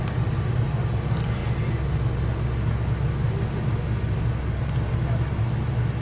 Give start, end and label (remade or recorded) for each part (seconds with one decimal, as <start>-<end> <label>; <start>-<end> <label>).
0.0-6.0 recorded